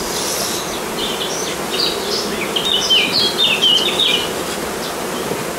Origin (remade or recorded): recorded